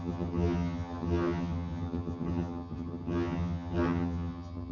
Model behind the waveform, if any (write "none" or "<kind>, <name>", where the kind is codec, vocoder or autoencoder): vocoder, HiFi-GAN